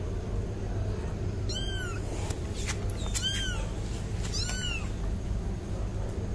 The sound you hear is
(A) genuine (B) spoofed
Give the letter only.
A